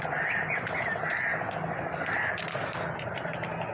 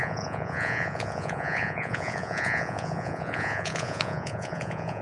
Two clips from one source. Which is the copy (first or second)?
second